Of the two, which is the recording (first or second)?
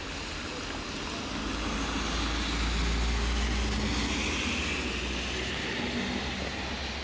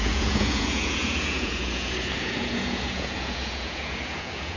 first